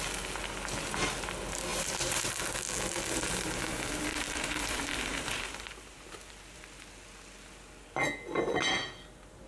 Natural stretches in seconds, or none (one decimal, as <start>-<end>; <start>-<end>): 0.0-1.7; 2.3-4.1; 6.6-9.5